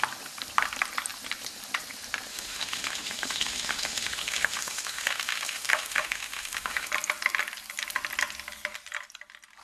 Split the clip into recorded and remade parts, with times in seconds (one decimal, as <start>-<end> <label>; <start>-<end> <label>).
0.0-2.3 recorded; 2.3-6.9 remade; 6.9-9.6 recorded